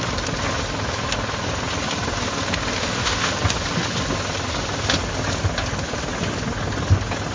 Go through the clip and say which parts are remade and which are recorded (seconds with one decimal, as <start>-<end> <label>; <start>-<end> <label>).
0.0-2.8 recorded; 2.8-3.3 remade; 3.3-7.3 recorded